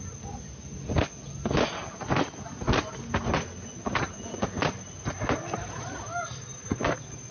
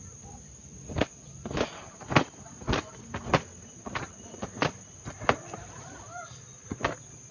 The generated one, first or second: second